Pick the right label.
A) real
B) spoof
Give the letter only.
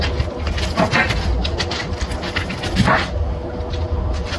A